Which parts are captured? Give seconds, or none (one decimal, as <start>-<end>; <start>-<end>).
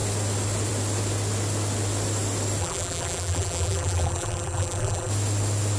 0.0-2.6; 5.1-5.8